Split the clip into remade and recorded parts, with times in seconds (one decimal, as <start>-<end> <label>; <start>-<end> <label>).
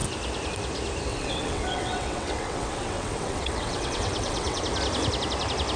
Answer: 0.0-1.1 recorded; 1.1-4.6 remade; 4.6-5.8 recorded